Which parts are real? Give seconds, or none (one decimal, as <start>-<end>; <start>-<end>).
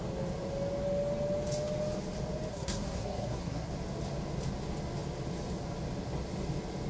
0.0-2.5; 3.7-6.9